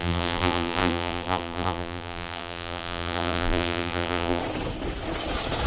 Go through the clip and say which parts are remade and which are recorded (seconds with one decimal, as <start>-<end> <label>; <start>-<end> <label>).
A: 0.0-4.4 remade; 4.4-5.7 recorded